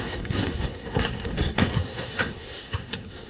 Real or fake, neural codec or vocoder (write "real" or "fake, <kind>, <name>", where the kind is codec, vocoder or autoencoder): fake, codec, SNAC